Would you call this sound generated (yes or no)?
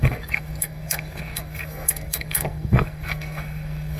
yes